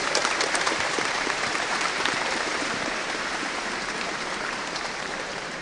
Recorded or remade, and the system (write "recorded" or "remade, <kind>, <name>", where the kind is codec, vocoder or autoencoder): remade, vocoder, BigVGAN v2